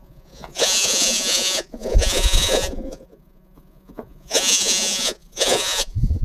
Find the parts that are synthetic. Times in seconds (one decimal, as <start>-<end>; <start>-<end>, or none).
0.0-6.2